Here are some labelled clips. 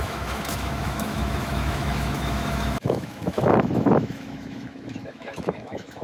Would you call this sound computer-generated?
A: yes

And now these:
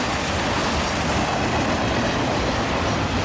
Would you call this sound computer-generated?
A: no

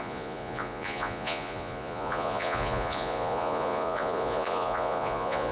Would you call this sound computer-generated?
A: yes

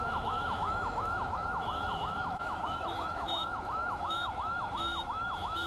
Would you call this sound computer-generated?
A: yes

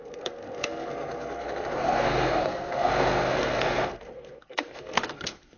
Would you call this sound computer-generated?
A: yes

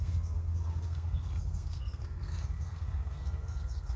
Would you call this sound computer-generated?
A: yes